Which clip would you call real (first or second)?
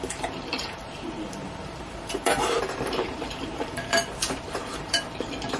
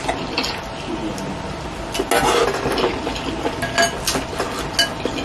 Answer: second